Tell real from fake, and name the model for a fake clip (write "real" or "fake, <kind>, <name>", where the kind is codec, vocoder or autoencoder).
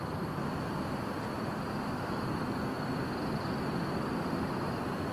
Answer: real